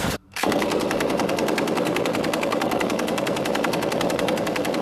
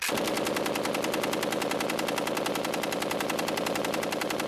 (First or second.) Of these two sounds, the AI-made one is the first